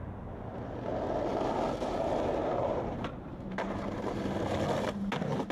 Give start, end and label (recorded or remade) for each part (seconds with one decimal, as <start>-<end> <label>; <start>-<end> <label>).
0.0-1.3 recorded; 1.3-4.6 remade; 4.6-5.5 recorded